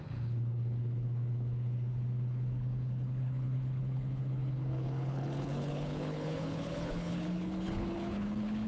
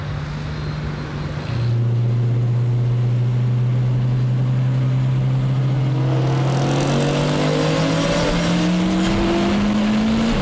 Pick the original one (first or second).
second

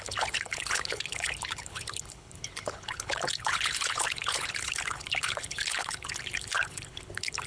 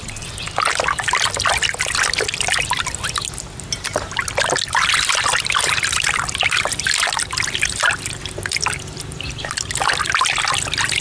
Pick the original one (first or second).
second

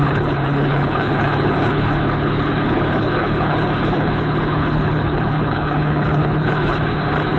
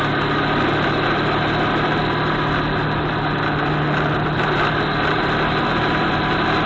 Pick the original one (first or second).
second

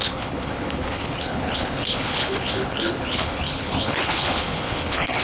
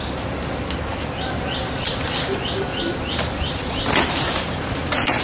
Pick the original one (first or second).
second